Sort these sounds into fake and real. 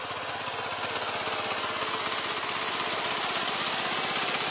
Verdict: real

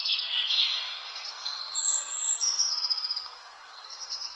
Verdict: fake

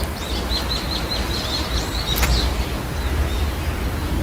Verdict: real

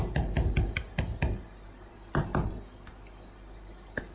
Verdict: real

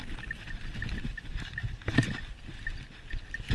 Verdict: real